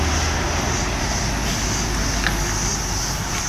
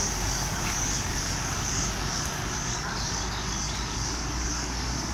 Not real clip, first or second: second